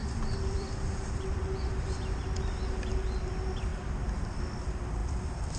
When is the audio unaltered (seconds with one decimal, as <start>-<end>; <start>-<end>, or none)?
1.7-5.0